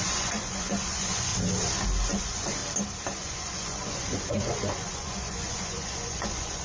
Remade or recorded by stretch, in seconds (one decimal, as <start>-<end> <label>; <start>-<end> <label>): 0.0-1.3 remade; 1.3-2.1 recorded; 2.1-2.6 remade; 2.6-3.2 recorded; 3.2-6.6 remade